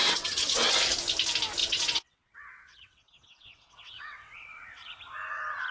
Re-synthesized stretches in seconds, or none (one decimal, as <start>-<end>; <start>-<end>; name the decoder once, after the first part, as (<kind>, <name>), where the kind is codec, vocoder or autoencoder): 0.0-0.7 (vocoder, WaveNeXt); 1.6-5.0

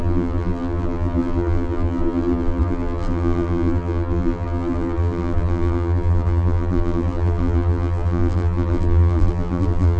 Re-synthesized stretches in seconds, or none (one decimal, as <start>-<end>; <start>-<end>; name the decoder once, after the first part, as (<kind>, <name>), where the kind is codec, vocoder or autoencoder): 0.0-10.0 (vocoder, BigVGAN v2)

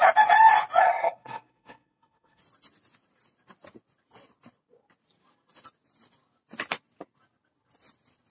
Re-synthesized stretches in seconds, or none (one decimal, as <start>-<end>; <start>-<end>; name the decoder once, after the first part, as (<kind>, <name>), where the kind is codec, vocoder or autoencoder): 0.8-2.4 (codec, SNAC)

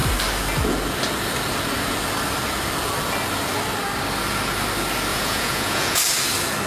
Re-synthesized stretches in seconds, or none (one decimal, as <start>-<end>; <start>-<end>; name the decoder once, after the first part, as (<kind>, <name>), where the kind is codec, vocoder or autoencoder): 5.1-6.0 (vocoder, Vocos)

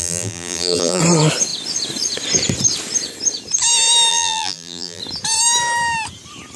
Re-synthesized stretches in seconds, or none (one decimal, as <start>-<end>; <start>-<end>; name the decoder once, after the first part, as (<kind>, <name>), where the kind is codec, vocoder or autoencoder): 0.0-1.0 (vocoder, BigVGAN v2); 4.1-5.0

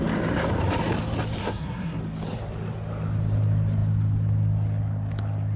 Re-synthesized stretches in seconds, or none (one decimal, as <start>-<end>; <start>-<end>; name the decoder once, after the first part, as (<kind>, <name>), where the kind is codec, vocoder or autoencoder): 1.4-2.0 (codec, SNAC)

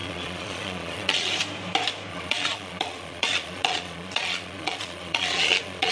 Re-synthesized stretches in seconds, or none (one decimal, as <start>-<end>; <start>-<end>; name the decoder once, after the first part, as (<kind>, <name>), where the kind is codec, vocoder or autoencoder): 0.0-1.3 (vocoder, Vocos); 2.1-5.9

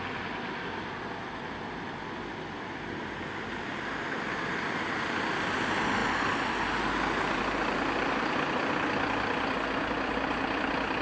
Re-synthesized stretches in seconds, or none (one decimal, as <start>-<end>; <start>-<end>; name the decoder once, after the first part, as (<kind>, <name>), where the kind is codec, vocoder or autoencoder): none